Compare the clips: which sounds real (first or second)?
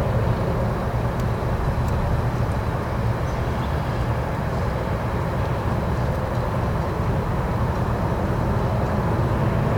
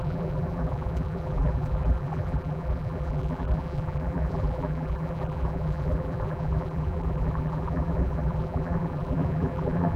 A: first